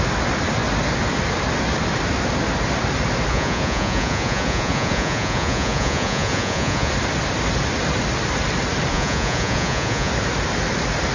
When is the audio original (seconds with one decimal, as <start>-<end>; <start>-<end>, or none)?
0.0-3.3; 6.9-8.9; 10.1-11.1